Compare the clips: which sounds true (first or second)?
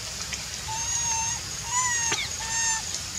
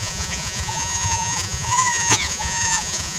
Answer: first